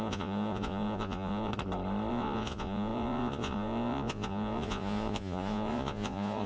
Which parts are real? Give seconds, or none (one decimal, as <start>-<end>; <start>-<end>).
1.5-2.1